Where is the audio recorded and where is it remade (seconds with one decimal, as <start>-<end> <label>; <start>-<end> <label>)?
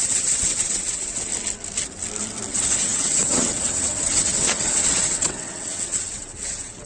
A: 0.0-1.3 remade; 1.3-2.5 recorded; 2.5-6.9 remade